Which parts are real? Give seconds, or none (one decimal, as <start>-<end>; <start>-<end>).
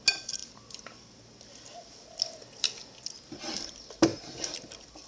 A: 0.0-5.1